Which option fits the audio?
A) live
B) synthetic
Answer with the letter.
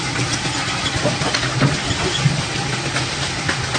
A